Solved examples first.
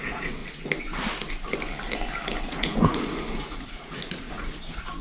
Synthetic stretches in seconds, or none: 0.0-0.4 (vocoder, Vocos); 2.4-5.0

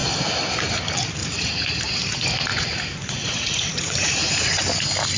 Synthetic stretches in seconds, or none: 1.2-1.8 (vocoder, Vocos); 2.5-4.5

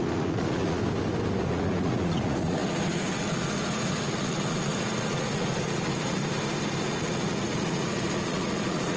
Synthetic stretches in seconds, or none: 0.0-0.8 (vocoder, Vocos); 1.4-6.2; 6.9-9.0

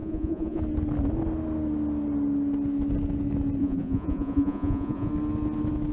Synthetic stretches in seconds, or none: 0.0-0.6 (vocoder, Vocos); 3.6-5.1

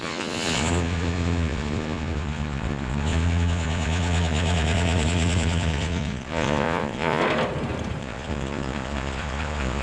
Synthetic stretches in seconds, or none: 0.0-7.2 (vocoder, Vocos); 8.0-9.8